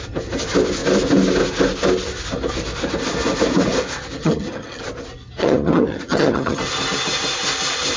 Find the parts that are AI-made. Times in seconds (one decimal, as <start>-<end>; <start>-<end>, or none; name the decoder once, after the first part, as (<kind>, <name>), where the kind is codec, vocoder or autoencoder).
4.2-4.8 (vocoder, HiFi-GAN); 5.4-6.6